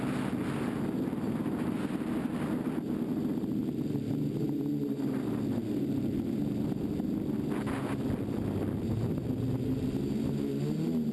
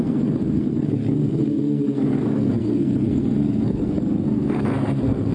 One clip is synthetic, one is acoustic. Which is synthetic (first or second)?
second